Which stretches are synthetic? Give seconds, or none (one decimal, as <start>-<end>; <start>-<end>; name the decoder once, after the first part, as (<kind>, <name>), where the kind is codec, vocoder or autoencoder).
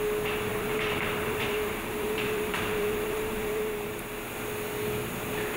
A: 0.5-3.9 (vocoder, BigVGAN v2)